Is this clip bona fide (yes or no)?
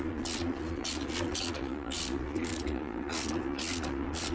no